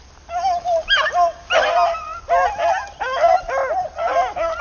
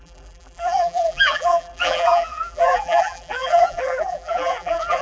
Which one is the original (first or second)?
first